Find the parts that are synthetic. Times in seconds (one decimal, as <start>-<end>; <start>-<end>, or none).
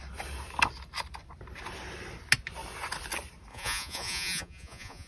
3.5-5.1